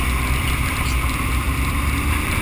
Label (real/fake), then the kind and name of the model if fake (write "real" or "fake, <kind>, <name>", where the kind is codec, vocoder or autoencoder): fake, vocoder, BigVGAN v2